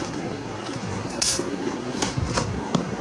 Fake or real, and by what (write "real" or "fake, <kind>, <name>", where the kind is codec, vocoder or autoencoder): fake, codec, SNAC